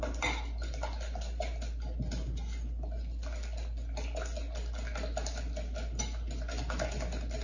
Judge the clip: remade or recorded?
recorded